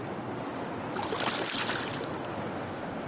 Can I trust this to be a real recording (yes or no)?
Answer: yes